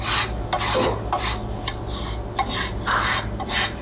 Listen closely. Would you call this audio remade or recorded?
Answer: recorded